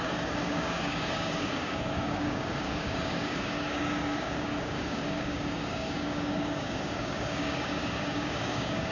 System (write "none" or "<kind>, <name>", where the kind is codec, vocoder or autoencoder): codec, DAC